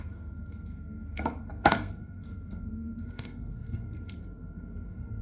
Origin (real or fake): fake